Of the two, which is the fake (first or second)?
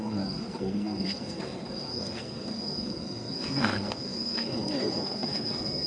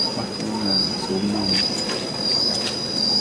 first